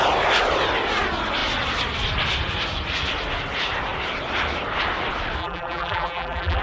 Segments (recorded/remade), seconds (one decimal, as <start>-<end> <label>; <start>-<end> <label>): 0.0-5.4 recorded; 5.4-6.6 remade